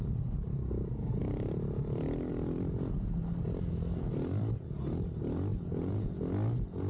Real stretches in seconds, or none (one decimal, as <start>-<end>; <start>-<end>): 0.0-5.5; 6.2-6.9